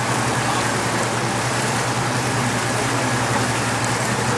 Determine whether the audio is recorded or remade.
recorded